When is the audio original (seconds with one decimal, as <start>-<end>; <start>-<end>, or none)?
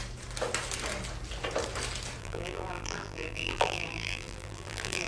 0.0-2.2